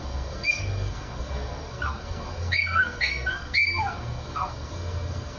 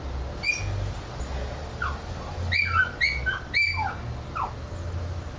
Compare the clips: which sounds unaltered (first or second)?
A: second